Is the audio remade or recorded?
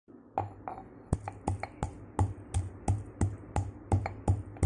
recorded